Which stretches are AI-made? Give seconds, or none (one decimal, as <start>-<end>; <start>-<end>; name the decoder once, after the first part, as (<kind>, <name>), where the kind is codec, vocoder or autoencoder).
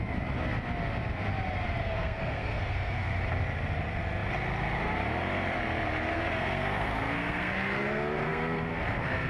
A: 1.8-3.2 (codec, SNAC); 6.1-9.3